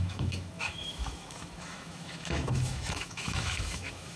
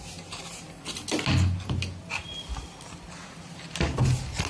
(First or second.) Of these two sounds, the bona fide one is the second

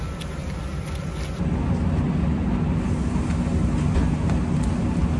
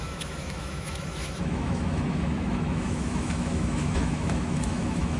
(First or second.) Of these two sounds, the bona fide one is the first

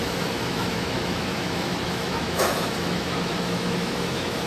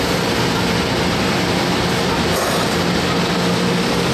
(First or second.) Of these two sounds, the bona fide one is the second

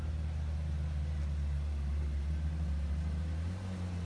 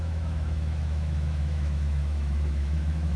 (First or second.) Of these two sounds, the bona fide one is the first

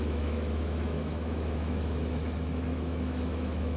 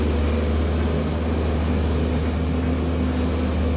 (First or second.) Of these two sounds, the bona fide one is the second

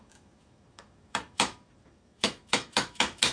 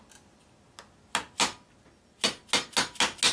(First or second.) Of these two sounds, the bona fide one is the second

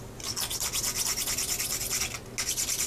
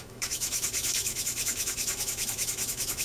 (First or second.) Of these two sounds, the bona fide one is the first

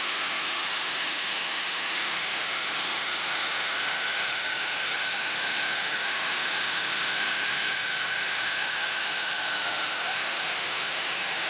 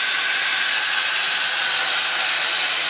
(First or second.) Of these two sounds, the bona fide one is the second